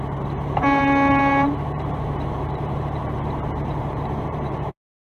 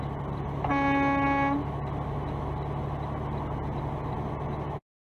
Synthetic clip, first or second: first